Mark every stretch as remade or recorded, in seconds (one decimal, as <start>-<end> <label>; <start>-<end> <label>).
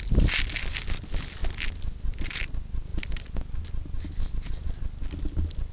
0.0-5.7 recorded